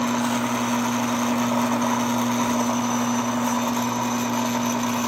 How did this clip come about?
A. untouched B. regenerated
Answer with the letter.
A